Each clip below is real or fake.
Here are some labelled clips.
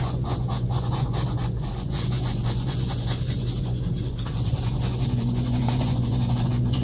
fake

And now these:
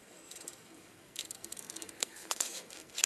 fake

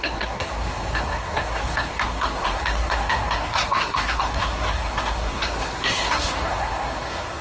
fake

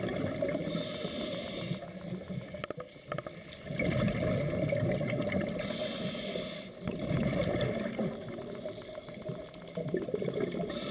real